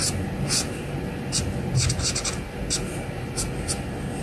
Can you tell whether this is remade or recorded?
recorded